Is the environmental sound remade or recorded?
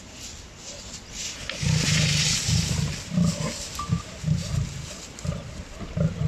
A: recorded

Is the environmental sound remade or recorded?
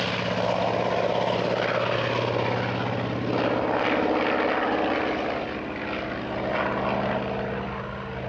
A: recorded